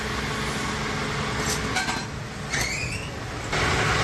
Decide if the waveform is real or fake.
real